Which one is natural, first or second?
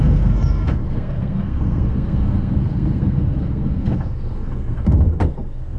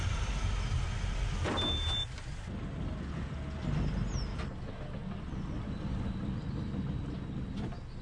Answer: second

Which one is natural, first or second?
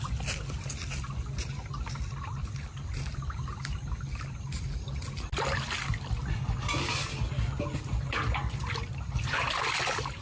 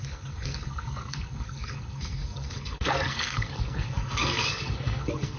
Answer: first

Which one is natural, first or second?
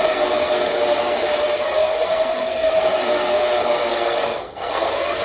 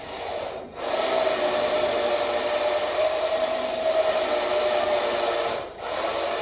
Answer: second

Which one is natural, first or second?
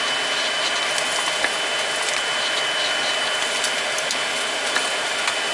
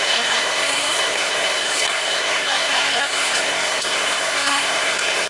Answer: first